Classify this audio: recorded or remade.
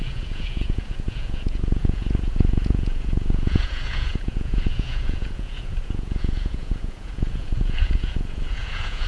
remade